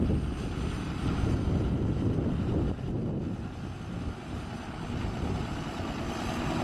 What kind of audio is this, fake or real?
real